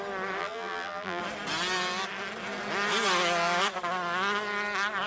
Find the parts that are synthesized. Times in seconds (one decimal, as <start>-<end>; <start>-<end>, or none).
0.4-1.2